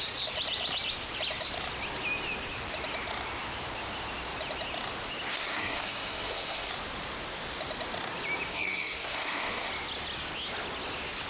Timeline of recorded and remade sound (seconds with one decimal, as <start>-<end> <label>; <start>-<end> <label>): 0.0-5.3 recorded; 5.3-6.7 remade; 6.7-8.5 recorded; 8.5-9.7 remade; 9.7-11.3 recorded